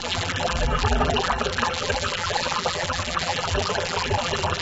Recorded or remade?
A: remade